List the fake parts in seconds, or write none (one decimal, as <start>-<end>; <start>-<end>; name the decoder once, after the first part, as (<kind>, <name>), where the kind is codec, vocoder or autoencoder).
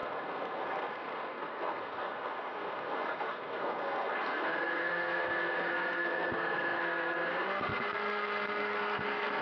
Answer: 0.0-9.4 (codec, SNAC)